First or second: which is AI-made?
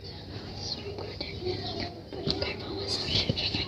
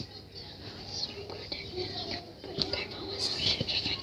second